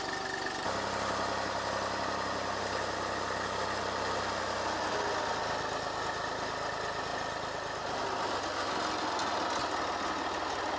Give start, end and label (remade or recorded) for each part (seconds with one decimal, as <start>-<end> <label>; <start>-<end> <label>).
0.0-10.8 recorded